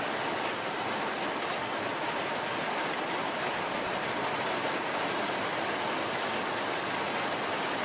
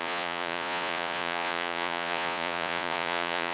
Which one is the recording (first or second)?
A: first